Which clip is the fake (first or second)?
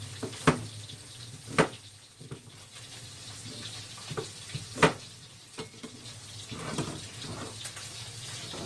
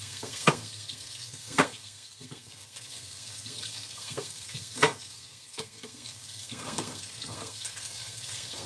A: second